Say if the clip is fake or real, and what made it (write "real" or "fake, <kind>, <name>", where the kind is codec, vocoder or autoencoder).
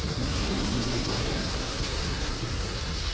fake, codec, SNAC